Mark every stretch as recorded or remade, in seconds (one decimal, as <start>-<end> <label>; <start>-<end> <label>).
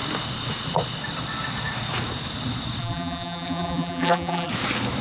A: 0.0-2.8 recorded; 2.8-4.5 remade; 4.5-5.0 recorded